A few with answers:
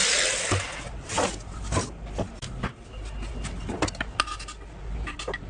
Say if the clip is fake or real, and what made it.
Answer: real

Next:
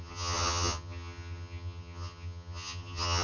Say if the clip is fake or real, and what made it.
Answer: fake, vocoder, HiFi-GAN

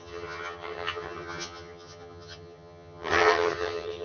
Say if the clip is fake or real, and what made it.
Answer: fake, vocoder, HiFi-GAN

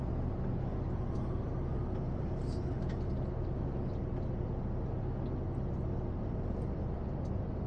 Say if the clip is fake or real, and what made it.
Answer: real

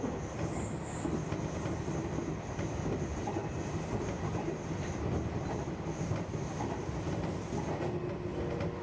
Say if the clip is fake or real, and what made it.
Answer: real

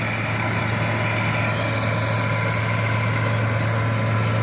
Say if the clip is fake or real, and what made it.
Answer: real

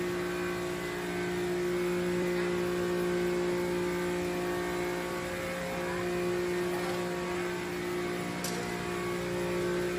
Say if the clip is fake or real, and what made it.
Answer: real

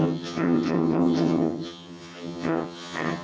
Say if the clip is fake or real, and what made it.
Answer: fake, vocoder, HiFi-GAN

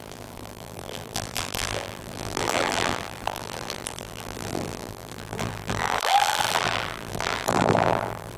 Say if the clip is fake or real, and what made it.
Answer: fake, vocoder, BigVGAN v2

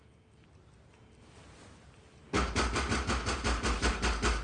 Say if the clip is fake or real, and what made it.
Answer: real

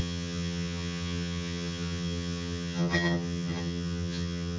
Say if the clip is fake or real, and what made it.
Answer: fake, vocoder, HiFi-GAN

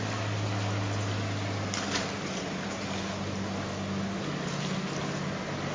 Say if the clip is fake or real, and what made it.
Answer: real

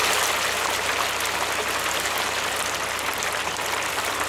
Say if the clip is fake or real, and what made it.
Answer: real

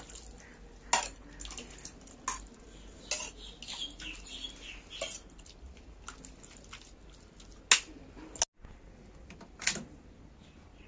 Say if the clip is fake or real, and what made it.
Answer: real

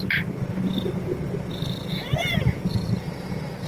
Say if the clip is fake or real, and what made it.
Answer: real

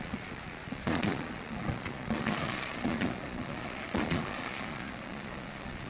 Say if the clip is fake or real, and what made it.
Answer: fake, vocoder, Vocos